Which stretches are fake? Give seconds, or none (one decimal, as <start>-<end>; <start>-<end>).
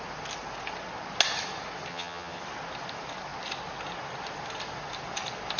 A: 1.9-2.4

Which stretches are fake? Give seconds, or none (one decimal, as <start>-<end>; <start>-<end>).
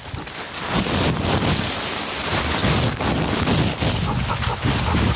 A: none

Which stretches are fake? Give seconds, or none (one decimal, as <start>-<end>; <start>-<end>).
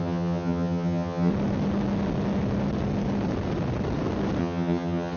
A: 0.0-1.3; 4.4-5.2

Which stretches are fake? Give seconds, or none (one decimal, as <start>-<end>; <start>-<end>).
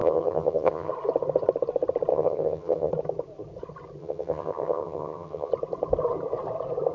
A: 0.0-0.9; 2.1-2.9; 4.0-5.5